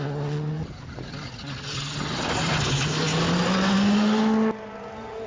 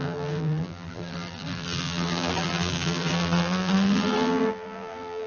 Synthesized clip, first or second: second